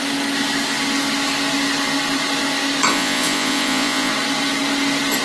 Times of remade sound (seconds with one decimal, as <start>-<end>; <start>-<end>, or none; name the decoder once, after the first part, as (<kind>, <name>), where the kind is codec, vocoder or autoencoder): 2.9-4.1 (vocoder, Vocos)